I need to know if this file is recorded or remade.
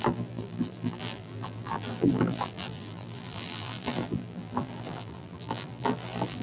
remade